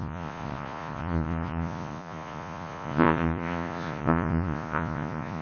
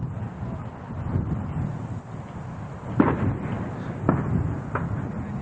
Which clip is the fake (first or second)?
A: first